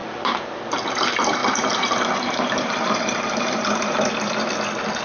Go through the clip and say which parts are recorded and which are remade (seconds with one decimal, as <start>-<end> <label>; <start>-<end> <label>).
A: 0.0-0.6 remade; 0.6-1.4 recorded; 1.4-4.4 remade; 4.4-5.0 recorded